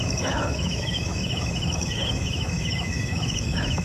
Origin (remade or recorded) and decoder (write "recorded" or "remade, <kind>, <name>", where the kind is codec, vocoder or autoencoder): remade, autoencoder, DAC-VAE